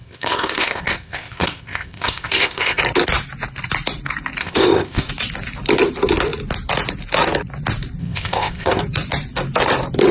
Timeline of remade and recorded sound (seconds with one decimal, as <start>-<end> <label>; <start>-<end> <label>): 0.0-2.8 remade; 2.8-4.4 recorded; 4.4-5.1 remade; 5.1-8.0 recorded; 8.0-8.8 remade; 8.8-10.1 recorded